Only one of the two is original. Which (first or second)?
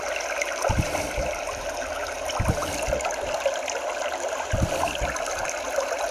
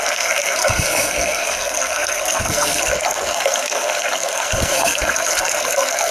first